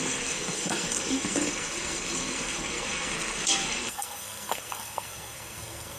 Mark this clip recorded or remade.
remade